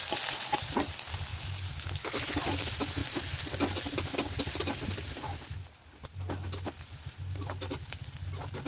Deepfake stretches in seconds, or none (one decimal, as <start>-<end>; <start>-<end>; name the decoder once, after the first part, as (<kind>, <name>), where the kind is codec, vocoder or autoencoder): 1.3-2.2 (autoencoder, DAC-VAE)